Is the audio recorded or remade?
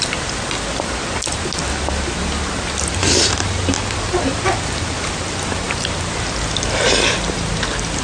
recorded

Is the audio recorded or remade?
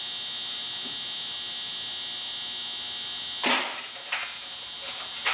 recorded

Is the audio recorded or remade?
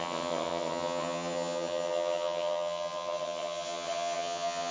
remade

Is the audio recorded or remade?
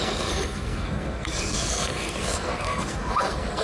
remade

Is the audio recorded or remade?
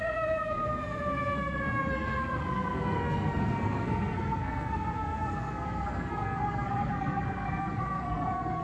remade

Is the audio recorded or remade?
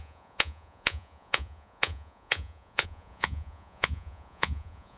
remade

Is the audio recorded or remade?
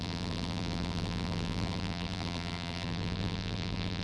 remade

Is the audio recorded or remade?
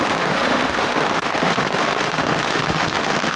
remade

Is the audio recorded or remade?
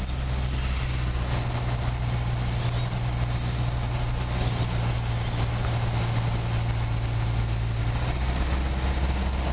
recorded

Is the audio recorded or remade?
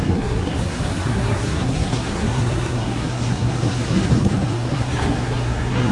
remade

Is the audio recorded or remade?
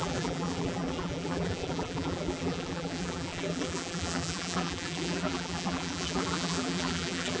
remade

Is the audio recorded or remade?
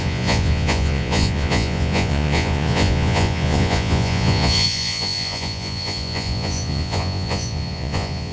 remade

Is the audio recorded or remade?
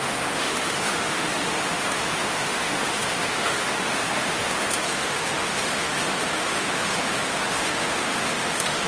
remade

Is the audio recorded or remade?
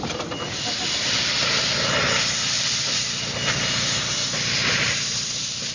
remade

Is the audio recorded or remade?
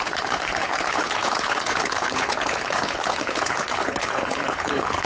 remade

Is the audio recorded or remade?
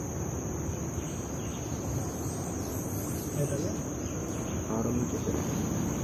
recorded